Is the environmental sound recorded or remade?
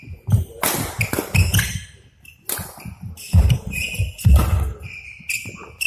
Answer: recorded